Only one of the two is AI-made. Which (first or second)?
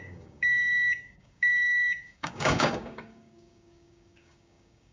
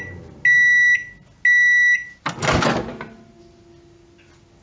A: first